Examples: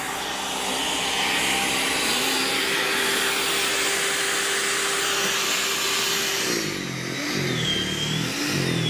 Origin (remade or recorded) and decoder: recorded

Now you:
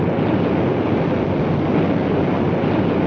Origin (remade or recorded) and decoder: recorded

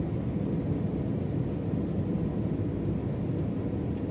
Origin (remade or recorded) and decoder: recorded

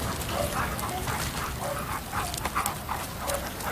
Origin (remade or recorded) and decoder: recorded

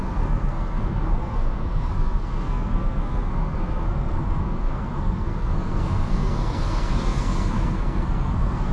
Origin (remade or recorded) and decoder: remade, codec, SNAC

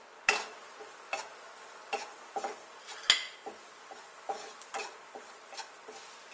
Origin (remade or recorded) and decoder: recorded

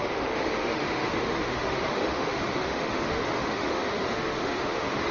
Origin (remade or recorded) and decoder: remade, autoencoder, DAC-VAE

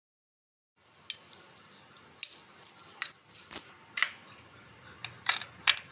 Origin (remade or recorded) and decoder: recorded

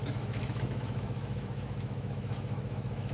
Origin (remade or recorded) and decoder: remade, autoencoder, DAC-VAE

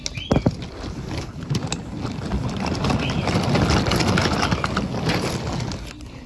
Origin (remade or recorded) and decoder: recorded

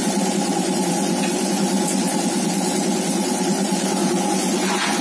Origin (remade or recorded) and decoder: remade, vocoder, Vocos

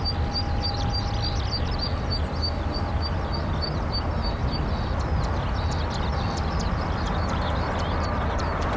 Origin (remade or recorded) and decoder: recorded